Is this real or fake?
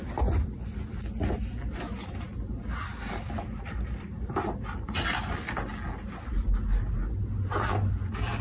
real